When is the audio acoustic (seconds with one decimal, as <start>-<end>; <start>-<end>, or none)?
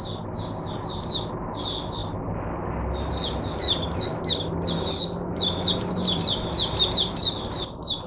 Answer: 0.0-8.1